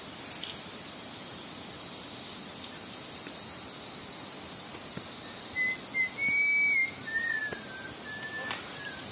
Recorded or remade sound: recorded